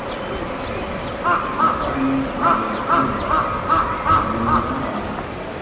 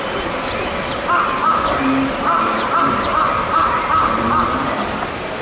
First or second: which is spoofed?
second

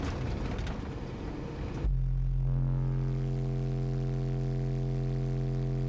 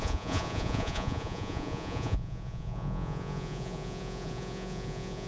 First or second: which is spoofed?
second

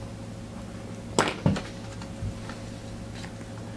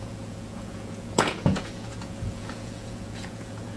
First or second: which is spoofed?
second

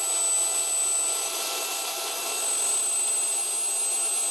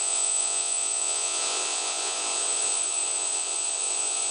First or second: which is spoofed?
second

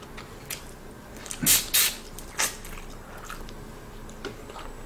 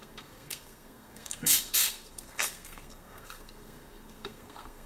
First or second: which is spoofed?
second